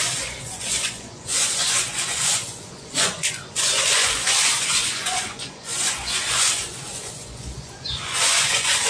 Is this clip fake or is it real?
fake